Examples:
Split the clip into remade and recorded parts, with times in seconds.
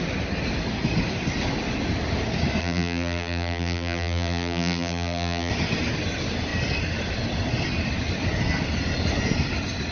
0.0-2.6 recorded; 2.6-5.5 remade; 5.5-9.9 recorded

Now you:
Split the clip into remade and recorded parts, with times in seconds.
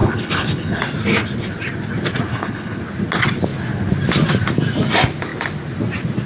0.0-0.8 remade; 0.8-2.3 recorded; 2.3-2.8 remade; 2.8-6.3 recorded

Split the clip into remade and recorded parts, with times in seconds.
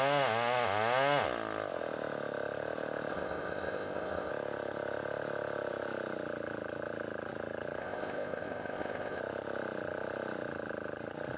0.0-3.1 recorded; 3.1-4.3 remade; 4.3-7.8 recorded; 7.8-9.2 remade; 9.2-11.4 recorded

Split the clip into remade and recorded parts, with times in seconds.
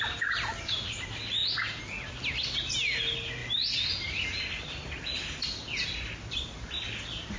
0.0-3.4 recorded; 3.4-4.4 remade; 4.4-7.4 recorded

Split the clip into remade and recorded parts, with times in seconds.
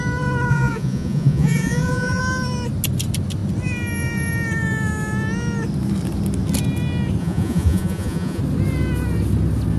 0.0-0.5 recorded; 0.5-2.2 remade; 2.2-7.2 recorded; 7.2-8.4 remade; 8.4-9.8 recorded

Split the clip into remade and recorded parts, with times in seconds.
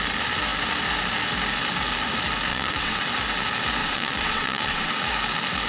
0.0-2.5 recorded; 2.5-3.0 remade; 3.0-3.8 recorded; 3.8-4.9 remade; 4.9-5.7 recorded